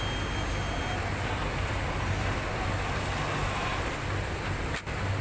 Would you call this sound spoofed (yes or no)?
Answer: no